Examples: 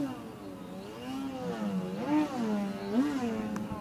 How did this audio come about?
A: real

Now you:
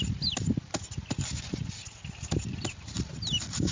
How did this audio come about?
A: real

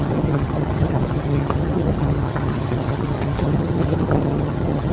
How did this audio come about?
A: fake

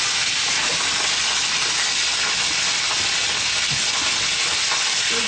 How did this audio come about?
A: real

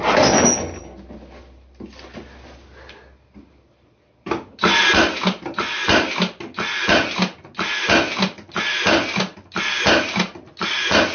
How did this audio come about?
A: real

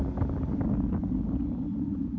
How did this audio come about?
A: real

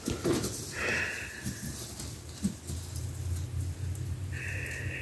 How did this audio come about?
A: real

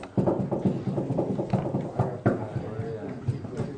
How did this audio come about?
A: real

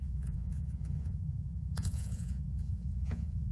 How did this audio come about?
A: fake